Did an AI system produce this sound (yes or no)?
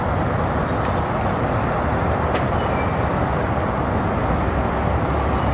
no